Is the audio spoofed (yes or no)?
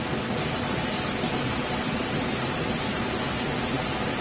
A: no